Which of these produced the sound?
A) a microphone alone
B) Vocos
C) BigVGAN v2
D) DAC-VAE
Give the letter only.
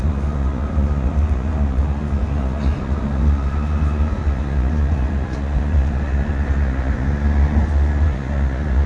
B